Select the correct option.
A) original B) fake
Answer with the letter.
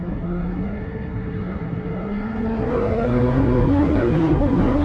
B